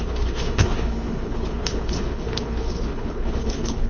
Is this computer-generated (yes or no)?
yes